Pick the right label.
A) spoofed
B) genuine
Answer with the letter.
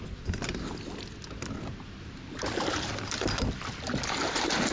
B